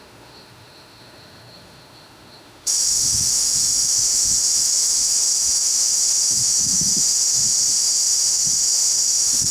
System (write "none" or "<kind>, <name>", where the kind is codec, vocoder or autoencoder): autoencoder, DAC-VAE